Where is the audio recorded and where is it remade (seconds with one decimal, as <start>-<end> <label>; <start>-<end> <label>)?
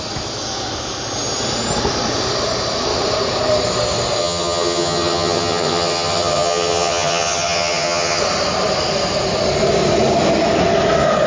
0.0-4.2 recorded; 4.2-8.2 remade; 8.2-11.3 recorded